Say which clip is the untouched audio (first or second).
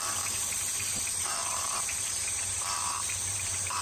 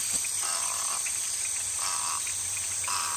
second